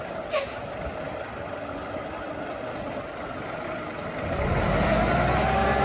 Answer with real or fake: real